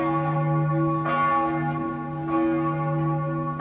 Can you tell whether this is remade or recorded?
recorded